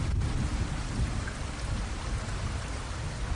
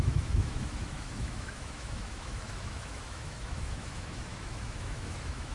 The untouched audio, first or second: first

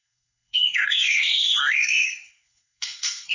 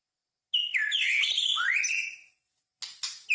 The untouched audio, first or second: second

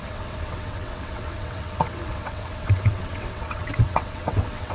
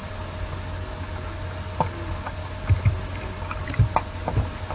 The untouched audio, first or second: second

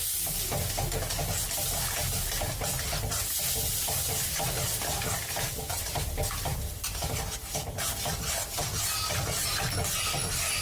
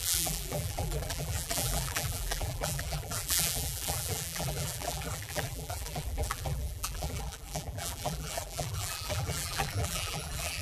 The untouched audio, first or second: first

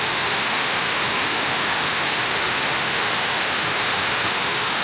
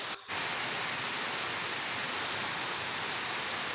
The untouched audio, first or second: second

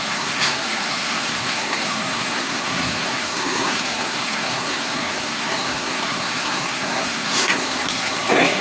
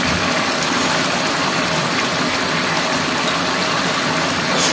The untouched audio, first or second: second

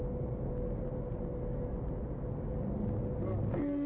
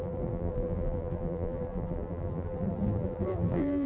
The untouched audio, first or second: first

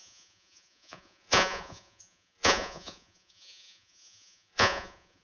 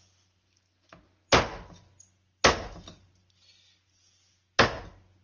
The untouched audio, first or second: second